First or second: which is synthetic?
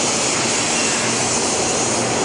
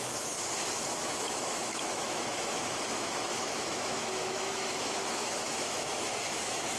second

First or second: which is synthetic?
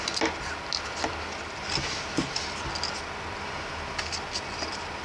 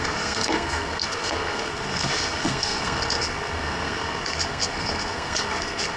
second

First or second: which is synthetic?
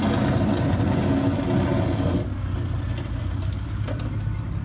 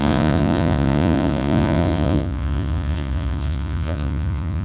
second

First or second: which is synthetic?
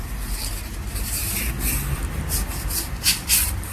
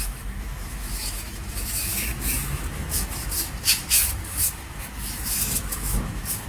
second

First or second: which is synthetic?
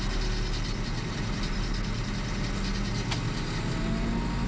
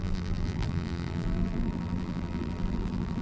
second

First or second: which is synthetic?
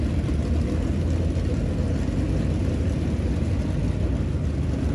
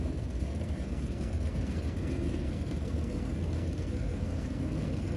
second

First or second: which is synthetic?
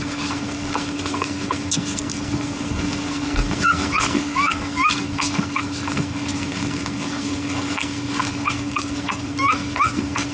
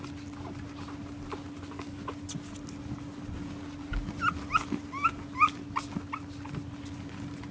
first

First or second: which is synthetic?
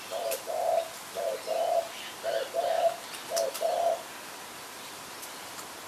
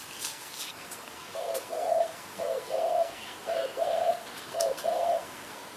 second